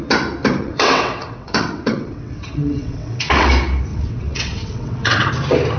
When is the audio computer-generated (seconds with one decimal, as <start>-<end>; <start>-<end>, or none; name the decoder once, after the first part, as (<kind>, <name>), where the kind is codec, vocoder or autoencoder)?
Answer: 0.6-3.5 (vocoder, WaveNeXt); 3.9-5.3